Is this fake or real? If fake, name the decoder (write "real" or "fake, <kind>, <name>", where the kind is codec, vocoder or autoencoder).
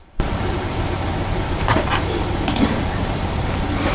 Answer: fake, vocoder, BigVGAN v2